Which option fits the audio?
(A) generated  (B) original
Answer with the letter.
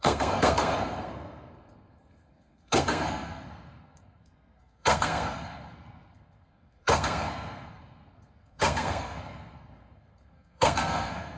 A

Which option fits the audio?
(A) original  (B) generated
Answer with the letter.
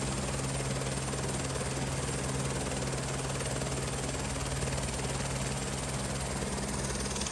A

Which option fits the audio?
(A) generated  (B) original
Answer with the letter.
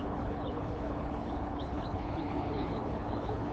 A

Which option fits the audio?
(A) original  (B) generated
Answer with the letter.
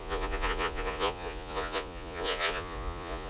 B